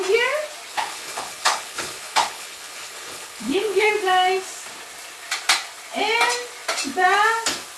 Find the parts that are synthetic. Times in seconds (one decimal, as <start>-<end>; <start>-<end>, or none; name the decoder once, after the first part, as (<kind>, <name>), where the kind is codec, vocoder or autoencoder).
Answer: 0.7-3.9 (codec, HILCodec)